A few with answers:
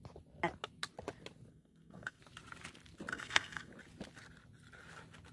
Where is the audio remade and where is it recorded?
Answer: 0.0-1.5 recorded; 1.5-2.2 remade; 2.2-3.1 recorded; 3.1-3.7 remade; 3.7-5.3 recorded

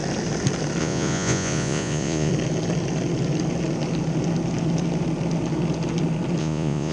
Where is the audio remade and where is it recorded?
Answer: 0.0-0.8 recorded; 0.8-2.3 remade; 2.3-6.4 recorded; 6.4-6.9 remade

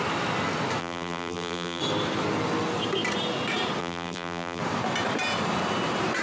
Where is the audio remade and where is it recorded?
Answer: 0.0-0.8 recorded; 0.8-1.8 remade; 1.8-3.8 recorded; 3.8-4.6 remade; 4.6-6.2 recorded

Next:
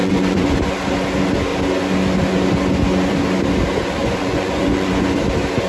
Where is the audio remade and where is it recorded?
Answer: 0.0-0.6 remade; 0.6-4.0 recorded; 4.0-5.0 remade; 5.0-5.7 recorded

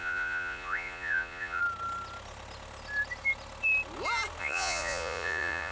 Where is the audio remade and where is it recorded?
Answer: 0.0-1.6 remade; 1.6-4.4 recorded; 4.4-5.7 remade

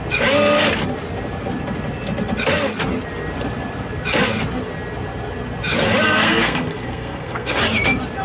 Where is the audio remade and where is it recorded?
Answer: 0.0-6.0 recorded; 6.0-7.6 remade; 7.6-8.2 recorded

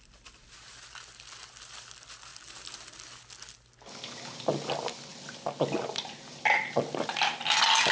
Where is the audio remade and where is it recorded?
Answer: 0.0-7.9 recorded

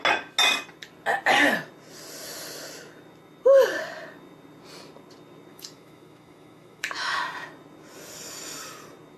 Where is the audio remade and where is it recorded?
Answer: 0.0-5.5 recorded; 5.5-7.2 remade; 7.2-9.2 recorded